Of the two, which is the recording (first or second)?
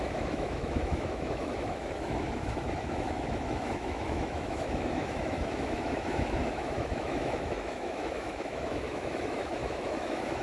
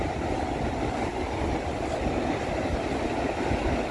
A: second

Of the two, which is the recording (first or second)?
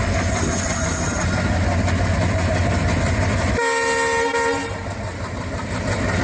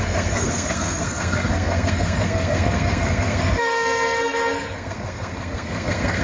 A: first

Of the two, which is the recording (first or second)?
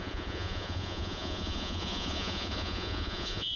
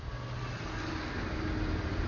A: second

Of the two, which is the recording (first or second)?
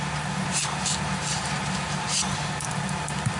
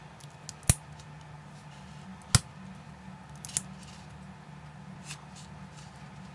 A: second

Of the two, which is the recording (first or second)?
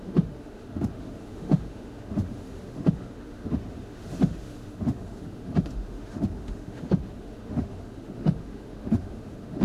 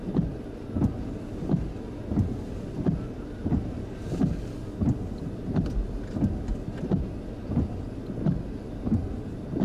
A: second